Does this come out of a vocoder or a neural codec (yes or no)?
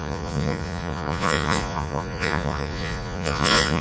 yes